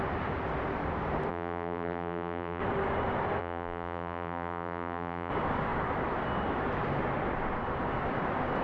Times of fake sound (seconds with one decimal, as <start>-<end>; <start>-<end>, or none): 1.3-2.6; 3.4-5.3